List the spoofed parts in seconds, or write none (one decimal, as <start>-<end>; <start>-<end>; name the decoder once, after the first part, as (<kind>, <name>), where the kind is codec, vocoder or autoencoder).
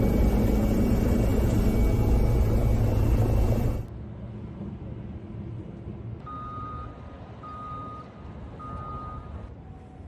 none